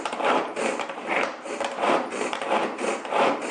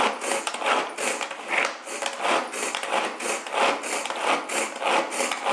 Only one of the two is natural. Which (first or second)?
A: second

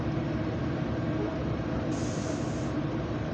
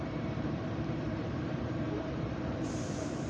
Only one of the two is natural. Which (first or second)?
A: first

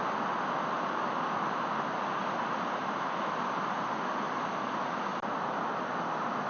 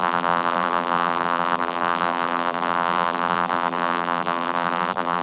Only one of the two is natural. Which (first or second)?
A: first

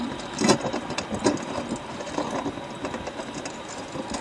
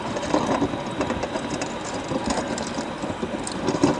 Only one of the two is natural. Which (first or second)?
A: first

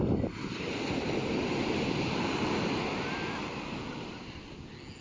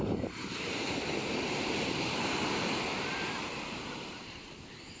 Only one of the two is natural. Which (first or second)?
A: first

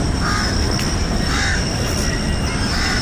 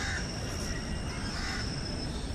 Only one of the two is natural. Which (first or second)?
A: first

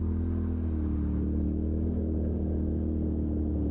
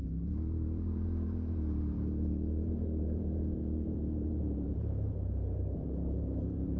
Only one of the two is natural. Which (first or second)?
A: first